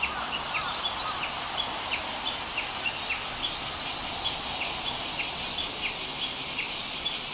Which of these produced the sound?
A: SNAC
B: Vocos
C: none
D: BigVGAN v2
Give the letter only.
C